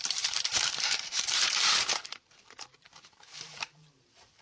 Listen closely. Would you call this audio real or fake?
fake